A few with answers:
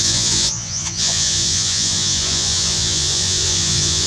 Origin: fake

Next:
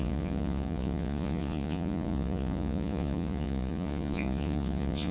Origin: fake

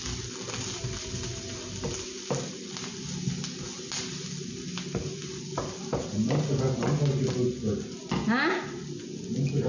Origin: real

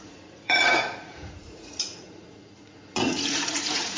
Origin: fake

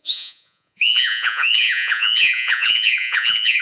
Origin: fake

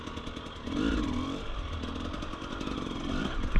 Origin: real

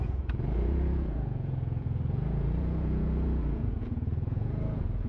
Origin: fake